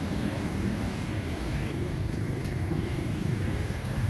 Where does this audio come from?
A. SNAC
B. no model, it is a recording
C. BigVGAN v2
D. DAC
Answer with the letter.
D